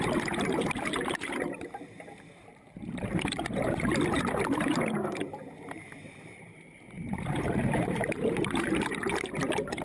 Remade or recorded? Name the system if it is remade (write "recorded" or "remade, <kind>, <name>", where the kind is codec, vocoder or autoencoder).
remade, vocoder, BigVGAN v2